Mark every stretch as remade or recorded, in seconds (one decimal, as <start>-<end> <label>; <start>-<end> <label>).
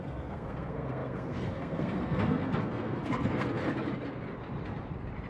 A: 0.0-3.6 remade; 3.6-5.3 recorded